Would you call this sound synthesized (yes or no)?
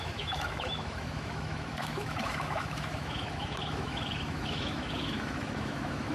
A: yes